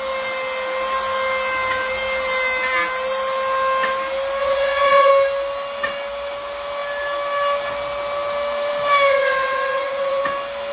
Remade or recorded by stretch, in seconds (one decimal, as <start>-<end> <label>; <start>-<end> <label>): 0.0-4.4 recorded; 4.4-5.1 remade; 5.1-9.1 recorded; 9.1-10.2 remade; 10.2-10.7 recorded